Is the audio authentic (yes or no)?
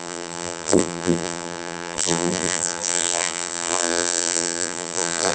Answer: no